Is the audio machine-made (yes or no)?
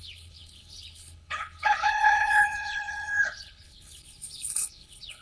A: yes